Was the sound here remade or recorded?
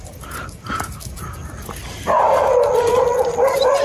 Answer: recorded